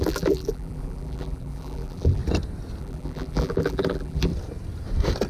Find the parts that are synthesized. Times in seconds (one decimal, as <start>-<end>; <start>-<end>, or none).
0.0-2.2; 2.8-4.3